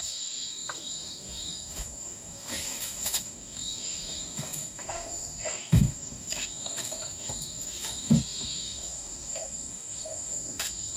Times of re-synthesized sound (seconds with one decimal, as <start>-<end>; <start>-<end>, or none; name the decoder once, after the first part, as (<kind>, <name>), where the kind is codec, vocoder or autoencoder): 0.0-11.0 (codec, DAC)